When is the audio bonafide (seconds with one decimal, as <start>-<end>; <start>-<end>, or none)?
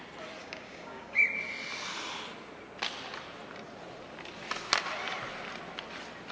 0.0-0.4; 1.2-6.3